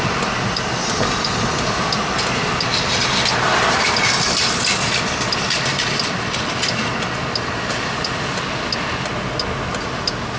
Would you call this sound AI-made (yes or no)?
no